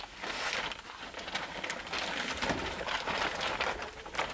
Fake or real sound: real